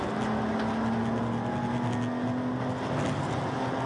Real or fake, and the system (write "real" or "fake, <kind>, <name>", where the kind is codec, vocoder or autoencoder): real